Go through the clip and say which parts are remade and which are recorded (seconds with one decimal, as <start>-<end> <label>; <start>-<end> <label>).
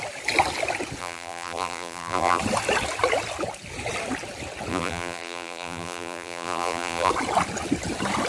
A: 0.0-1.0 recorded; 1.0-2.4 remade; 2.4-4.7 recorded; 4.7-7.1 remade; 7.1-8.3 recorded